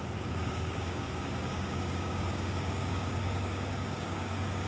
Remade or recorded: remade